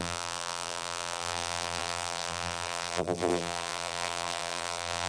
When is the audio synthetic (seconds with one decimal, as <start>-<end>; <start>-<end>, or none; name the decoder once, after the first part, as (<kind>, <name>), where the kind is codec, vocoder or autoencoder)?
0.0-5.1 (vocoder, BigVGAN v2)